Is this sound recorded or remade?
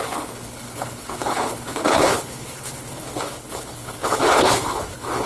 remade